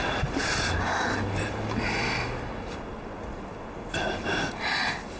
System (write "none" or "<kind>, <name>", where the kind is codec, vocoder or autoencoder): none